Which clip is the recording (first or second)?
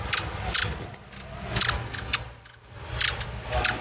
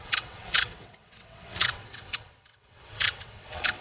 first